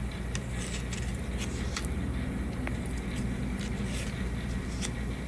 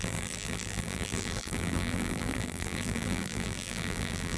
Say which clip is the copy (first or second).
second